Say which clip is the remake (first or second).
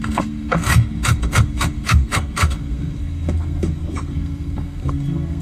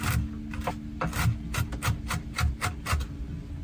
first